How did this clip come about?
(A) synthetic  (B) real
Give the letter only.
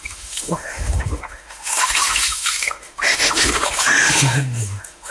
A